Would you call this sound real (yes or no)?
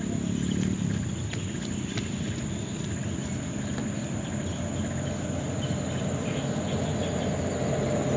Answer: yes